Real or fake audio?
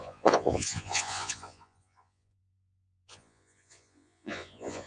fake